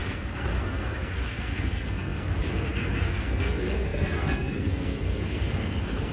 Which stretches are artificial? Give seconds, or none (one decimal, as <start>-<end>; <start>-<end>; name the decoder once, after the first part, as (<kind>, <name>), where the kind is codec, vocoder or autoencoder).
0.0-6.1 (codec, SNAC)